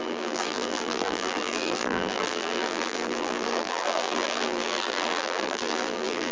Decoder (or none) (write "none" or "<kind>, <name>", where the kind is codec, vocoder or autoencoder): vocoder, BigVGAN v2